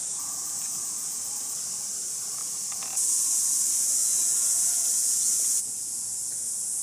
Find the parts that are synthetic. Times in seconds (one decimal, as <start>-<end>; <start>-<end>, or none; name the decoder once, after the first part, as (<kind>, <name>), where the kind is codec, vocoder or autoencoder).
0.0-1.3 (vocoder, Vocos); 2.4-3.4; 4.0-6.8